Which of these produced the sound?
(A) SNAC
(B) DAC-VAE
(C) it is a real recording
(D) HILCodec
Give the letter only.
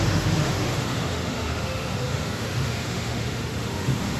B